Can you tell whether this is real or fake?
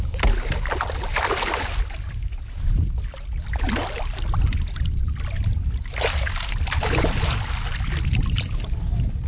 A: real